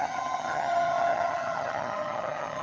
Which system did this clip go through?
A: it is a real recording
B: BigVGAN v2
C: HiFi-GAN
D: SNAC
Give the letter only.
C